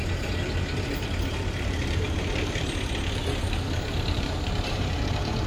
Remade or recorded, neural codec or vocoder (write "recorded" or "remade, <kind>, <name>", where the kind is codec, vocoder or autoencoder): remade, vocoder, BigVGAN v2